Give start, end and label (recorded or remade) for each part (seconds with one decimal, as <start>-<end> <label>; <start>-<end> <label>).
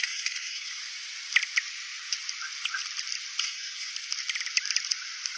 0.0-0.8 remade; 0.8-3.4 recorded; 3.4-3.9 remade; 3.9-5.4 recorded